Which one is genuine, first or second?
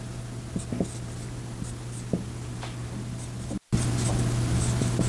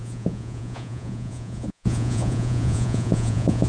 first